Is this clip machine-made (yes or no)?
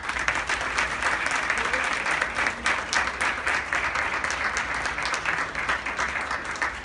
no